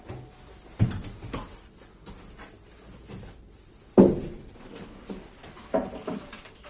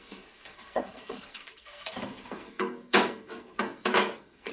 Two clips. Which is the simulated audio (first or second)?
second